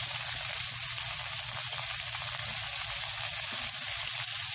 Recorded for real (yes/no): yes